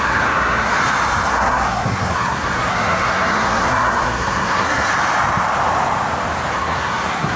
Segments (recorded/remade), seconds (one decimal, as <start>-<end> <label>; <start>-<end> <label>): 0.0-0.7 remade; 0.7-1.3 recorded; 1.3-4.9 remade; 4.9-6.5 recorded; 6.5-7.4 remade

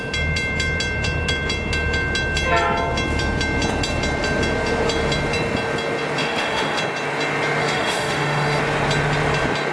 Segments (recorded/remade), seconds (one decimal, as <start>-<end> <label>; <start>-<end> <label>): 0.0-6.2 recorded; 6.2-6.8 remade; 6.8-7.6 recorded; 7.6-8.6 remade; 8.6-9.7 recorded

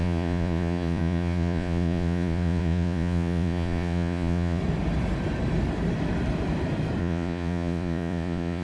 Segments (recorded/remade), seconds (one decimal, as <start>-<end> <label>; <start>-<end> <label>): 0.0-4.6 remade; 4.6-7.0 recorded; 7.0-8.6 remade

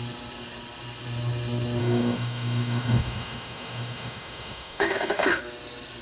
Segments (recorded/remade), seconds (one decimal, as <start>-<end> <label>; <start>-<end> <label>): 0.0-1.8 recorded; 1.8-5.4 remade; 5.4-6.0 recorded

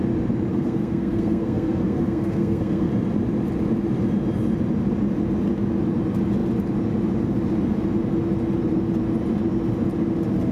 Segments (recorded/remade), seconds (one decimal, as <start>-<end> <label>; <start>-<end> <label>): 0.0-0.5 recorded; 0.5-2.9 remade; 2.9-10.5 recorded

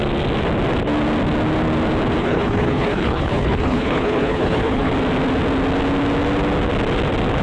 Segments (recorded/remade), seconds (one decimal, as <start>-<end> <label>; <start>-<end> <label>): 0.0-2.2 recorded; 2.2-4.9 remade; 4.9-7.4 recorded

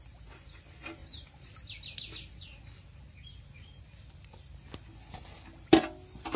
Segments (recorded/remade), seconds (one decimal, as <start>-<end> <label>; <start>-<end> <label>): 0.0-6.4 recorded

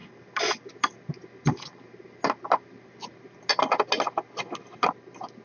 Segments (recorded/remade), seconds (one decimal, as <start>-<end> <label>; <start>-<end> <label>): 0.0-5.4 recorded